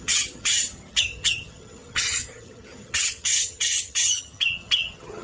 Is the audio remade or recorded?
remade